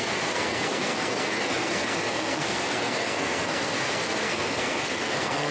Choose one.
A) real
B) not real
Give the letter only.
B